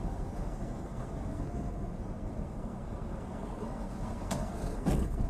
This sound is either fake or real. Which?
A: fake